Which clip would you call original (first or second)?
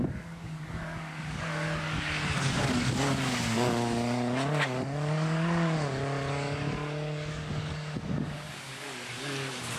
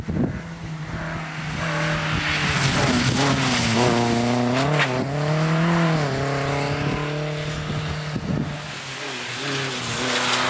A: second